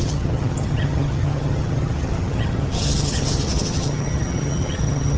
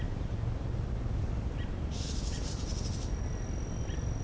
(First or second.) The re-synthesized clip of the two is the first